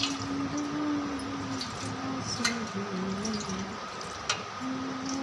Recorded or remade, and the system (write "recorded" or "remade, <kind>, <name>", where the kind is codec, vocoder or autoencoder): recorded